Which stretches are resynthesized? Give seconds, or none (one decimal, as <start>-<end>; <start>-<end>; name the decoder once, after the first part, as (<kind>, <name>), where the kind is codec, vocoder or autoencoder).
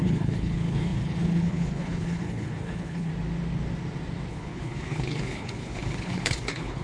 0.0-3.1 (codec, HILCodec); 4.3-6.8